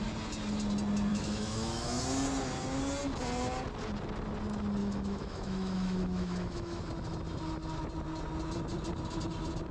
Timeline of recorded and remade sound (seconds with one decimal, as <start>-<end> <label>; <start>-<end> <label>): 0.0-1.1 recorded; 1.1-2.0 remade; 2.0-4.8 recorded; 4.8-6.8 remade; 6.8-9.7 recorded